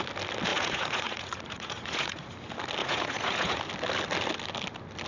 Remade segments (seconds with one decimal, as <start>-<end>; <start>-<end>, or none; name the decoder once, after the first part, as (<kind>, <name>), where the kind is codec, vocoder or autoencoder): 0.5-2.3 (vocoder, Vocos); 2.8-3.6